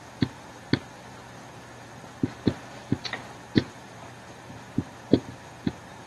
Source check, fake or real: fake